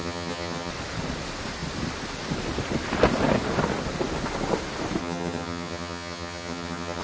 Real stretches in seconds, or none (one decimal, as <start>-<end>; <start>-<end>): 0.7-5.0